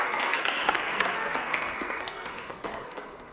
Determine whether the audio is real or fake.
fake